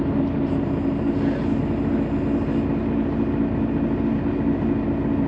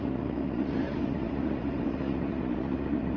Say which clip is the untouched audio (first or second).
first